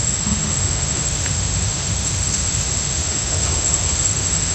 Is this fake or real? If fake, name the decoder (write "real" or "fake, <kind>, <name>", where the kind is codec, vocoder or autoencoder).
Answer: fake, autoencoder, DAC-VAE